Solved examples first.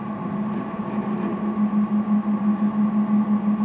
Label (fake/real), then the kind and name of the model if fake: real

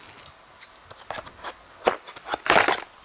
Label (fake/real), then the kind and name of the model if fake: real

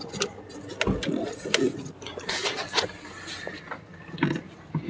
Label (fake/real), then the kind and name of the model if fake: real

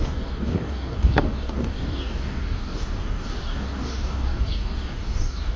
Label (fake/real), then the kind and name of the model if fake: fake, codec, DAC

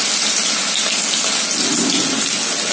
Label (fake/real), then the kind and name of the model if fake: real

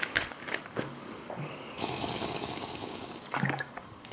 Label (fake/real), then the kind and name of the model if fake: fake, codec, DAC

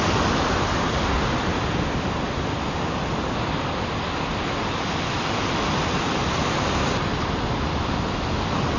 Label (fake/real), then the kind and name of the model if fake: real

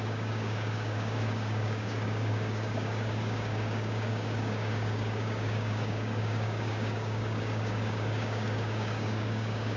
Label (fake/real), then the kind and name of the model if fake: fake, codec, DAC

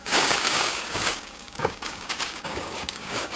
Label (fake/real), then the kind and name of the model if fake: fake, codec, DAC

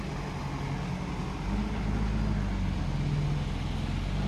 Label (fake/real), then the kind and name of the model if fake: real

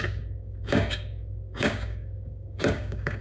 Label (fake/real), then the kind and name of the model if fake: fake, codec, DAC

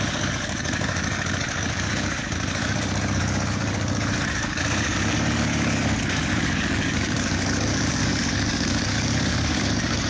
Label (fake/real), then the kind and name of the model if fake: fake, codec, DAC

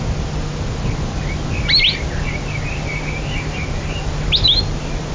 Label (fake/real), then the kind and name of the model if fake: real